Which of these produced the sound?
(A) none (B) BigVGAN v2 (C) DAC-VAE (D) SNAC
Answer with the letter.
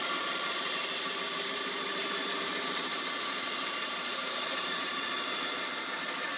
B